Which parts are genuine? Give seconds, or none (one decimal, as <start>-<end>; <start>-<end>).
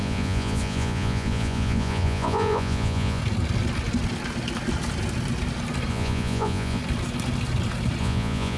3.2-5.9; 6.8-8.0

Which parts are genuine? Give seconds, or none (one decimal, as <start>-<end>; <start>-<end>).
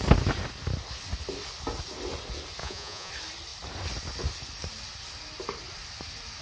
0.0-2.6; 3.1-6.4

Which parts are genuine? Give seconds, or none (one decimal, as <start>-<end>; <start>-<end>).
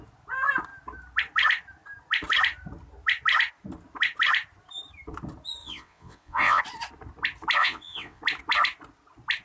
0.0-5.6; 6.6-7.6; 8.2-9.4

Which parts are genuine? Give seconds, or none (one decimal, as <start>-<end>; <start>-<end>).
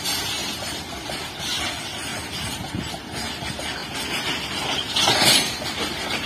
0.0-0.4; 1.6-3.8; 4.3-6.3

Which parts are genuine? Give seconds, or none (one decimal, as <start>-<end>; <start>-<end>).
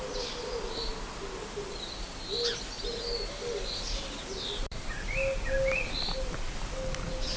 0.0-7.4